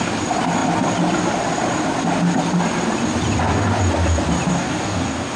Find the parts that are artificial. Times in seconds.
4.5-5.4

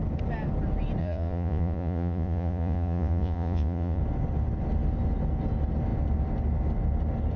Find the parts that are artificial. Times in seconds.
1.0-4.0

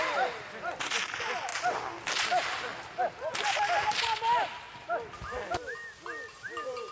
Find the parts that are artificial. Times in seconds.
0.0-1.5; 2.2-2.7; 6.3-6.9

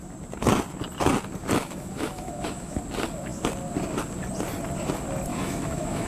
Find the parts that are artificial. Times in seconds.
1.6-2.8; 5.3-6.1

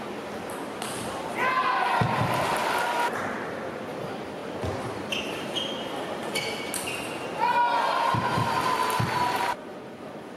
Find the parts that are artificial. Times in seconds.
none

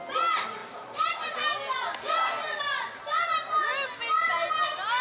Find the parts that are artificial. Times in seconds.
none

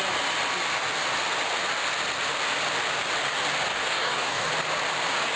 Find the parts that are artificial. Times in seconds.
3.7-4.5

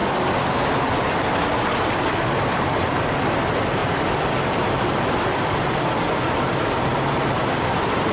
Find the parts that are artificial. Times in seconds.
3.8-5.9; 7.4-8.1